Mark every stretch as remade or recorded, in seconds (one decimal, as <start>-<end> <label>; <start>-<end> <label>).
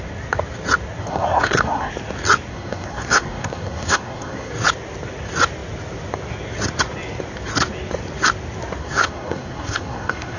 0.0-1.0 recorded; 1.0-1.9 remade; 1.9-2.5 recorded; 2.5-4.5 remade; 4.5-8.8 recorded; 8.8-10.4 remade